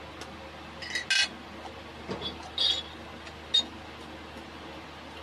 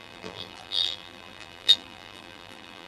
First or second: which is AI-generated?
second